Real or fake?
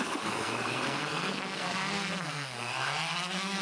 fake